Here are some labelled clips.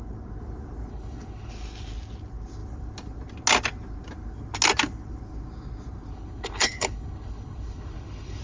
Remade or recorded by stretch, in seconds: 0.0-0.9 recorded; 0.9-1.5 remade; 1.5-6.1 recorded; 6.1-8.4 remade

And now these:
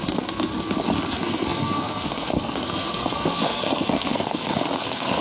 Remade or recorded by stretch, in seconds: 0.0-0.5 remade; 0.5-1.1 recorded; 1.1-5.2 remade

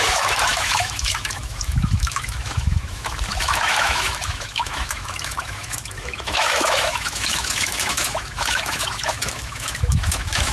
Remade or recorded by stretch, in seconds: 0.0-10.5 remade

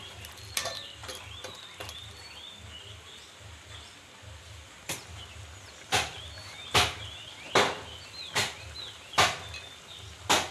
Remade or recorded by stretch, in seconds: 0.0-10.5 recorded

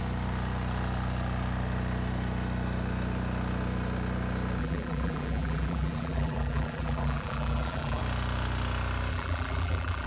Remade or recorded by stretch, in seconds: 0.0-4.6 recorded; 4.6-8.0 remade; 8.0-9.1 recorded; 9.1-10.1 remade